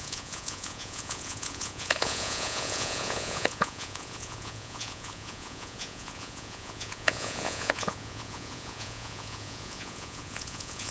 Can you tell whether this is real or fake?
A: fake